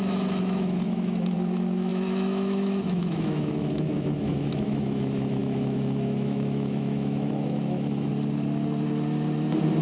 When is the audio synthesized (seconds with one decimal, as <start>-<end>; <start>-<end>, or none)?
0.0-8.1